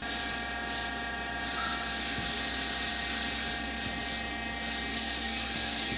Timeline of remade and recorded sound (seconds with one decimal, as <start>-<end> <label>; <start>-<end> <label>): 0.0-4.9 recorded; 4.9-6.0 remade